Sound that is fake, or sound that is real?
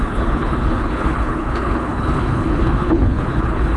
fake